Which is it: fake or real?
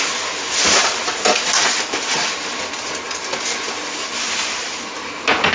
real